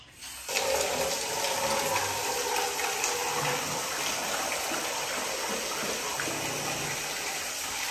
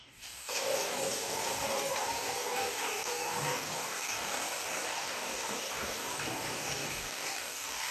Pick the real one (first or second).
first